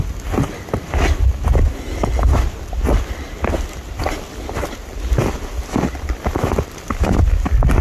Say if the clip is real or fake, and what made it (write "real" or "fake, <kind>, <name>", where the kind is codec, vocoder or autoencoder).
real